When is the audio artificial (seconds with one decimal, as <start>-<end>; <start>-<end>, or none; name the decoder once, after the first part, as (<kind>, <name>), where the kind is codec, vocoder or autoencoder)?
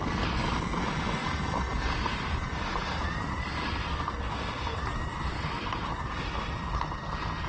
1.2-3.4 (vocoder, BigVGAN v2); 4.7-7.5